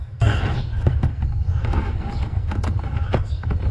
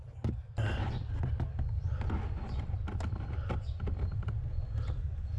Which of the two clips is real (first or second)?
second